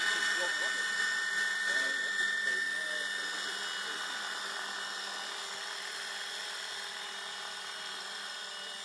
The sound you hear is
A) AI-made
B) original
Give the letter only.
B